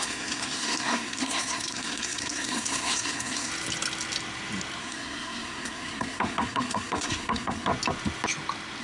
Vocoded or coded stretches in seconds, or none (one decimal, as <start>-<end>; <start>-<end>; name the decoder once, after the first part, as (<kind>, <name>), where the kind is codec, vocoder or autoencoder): 0.0-3.5 (codec, SNAC); 4.8-7.7